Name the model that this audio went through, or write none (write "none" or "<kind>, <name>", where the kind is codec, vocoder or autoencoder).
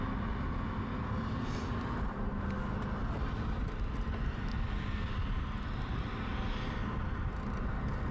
none